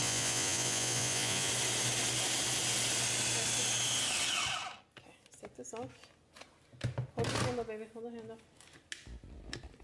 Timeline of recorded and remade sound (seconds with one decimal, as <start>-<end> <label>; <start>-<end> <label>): 0.0-1.5 remade; 1.5-9.8 recorded